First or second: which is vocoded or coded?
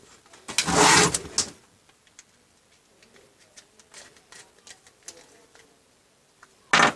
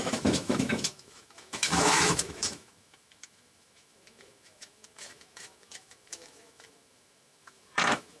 second